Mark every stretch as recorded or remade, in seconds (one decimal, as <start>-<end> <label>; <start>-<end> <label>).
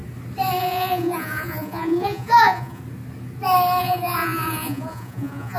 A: 0.0-0.6 recorded; 0.6-2.8 remade; 2.8-3.8 recorded; 3.8-5.6 remade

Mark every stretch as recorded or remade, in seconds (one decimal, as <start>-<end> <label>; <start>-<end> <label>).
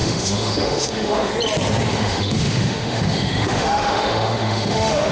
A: 0.0-1.3 remade; 1.3-1.9 recorded; 1.9-5.1 remade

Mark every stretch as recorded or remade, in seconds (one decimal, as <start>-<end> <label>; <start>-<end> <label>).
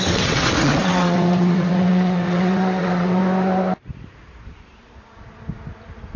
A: 0.0-3.2 remade; 3.2-6.2 recorded